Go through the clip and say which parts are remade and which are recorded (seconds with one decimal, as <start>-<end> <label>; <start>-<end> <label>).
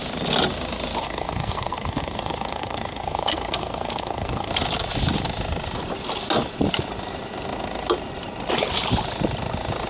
0.0-1.0 recorded; 1.0-4.5 remade; 4.5-9.9 recorded